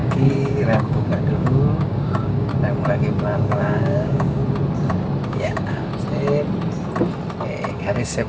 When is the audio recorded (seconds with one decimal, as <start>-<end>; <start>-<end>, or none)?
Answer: 2.5-3.5; 4.4-5.3; 5.9-7.7